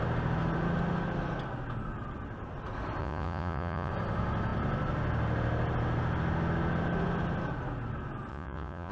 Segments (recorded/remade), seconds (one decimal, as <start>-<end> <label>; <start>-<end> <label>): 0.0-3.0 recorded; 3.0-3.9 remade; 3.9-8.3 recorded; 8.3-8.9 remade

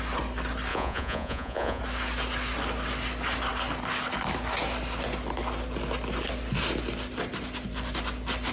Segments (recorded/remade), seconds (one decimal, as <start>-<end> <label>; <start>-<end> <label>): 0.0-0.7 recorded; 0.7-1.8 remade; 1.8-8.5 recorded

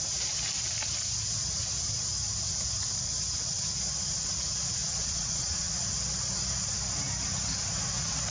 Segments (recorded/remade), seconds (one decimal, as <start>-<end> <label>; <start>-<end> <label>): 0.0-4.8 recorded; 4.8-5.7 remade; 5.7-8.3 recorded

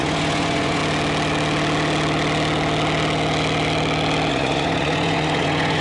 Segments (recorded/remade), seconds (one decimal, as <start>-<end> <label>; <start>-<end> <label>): 0.0-0.8 remade; 0.8-4.3 recorded; 4.3-5.8 remade

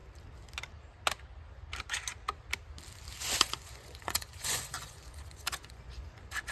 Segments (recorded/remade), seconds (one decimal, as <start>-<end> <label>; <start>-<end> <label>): 0.0-3.2 recorded; 3.2-6.5 remade